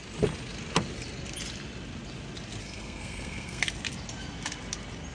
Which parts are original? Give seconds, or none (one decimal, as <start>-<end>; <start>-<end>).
0.0-2.6; 3.6-5.1